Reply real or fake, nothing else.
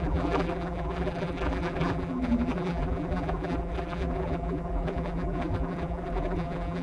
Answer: fake